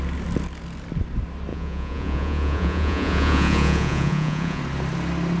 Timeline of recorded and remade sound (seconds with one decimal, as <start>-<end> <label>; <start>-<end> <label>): 0.0-1.5 recorded; 1.5-4.6 remade; 4.6-5.4 recorded